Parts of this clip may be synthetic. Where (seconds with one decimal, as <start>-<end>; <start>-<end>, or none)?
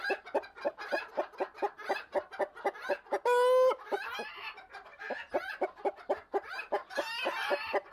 none